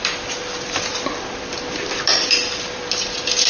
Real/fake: fake